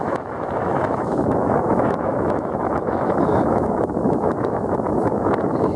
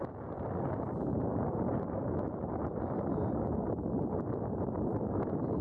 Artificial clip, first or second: first